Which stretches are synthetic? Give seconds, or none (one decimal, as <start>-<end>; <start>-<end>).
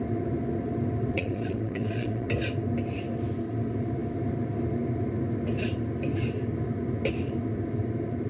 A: 1.1-2.3